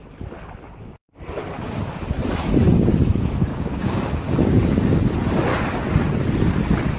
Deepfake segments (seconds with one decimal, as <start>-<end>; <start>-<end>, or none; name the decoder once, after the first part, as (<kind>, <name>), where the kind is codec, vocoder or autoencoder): 3.5-5.1 (codec, DAC)